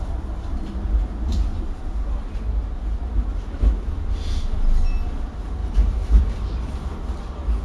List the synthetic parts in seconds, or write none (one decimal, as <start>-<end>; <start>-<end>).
1.5-2.1; 5.6-6.2